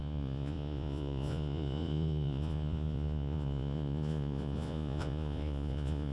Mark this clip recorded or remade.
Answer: remade